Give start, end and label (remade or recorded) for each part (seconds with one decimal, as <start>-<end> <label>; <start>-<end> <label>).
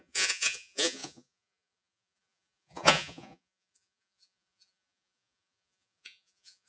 0.0-6.7 remade